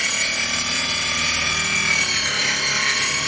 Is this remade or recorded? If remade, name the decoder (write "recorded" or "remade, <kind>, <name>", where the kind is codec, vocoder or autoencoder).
recorded